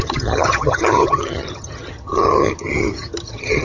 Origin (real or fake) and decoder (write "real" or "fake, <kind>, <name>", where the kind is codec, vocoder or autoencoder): fake, vocoder, HiFi-GAN